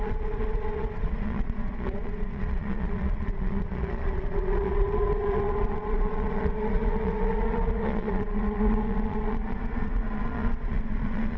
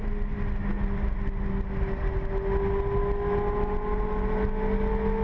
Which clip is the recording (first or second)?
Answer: second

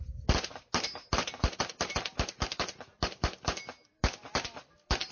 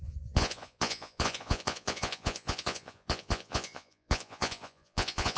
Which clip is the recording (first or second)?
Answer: first